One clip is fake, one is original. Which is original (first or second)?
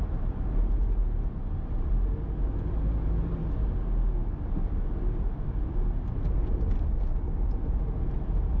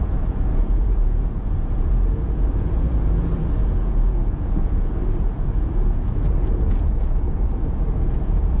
first